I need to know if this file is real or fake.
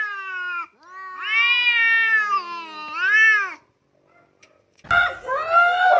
real